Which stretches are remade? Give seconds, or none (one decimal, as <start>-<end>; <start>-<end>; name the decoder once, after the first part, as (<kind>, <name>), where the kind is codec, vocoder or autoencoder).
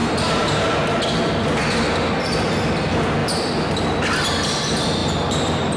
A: 0.0-0.6 (vocoder, BigVGAN v2); 5.0-5.8